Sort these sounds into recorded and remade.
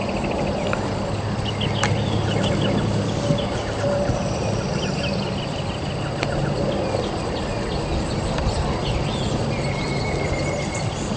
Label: recorded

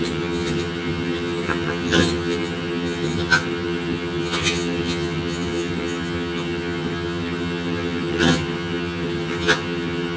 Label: remade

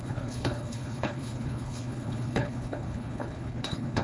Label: remade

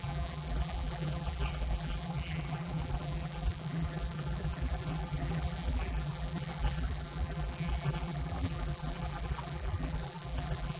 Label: remade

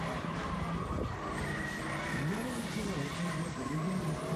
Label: recorded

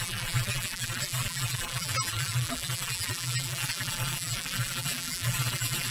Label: remade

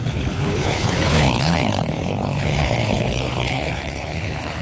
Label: remade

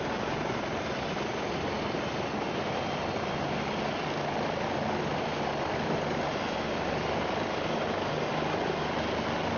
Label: recorded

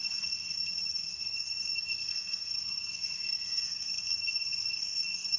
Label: remade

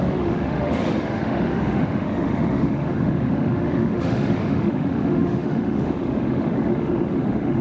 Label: remade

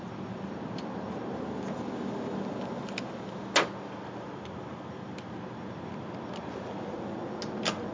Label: recorded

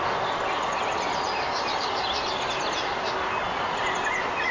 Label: recorded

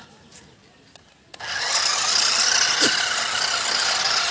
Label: recorded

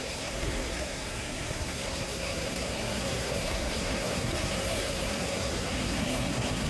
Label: remade